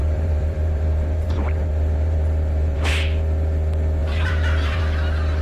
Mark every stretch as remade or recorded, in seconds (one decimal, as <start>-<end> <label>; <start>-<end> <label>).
0.0-2.9 remade; 2.9-4.0 recorded; 4.0-4.8 remade; 4.8-5.4 recorded